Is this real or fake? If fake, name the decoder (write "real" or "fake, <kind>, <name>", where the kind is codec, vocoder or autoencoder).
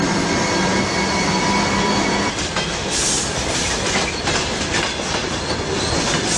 fake, vocoder, BigVGAN v2